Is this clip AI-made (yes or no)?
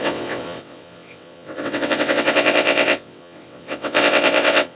yes